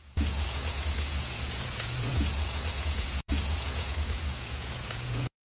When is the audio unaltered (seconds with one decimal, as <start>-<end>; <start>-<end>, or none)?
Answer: none